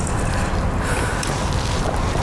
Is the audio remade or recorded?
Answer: recorded